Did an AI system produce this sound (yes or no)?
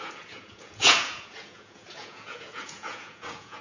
yes